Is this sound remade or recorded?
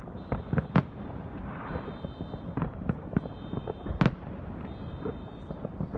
remade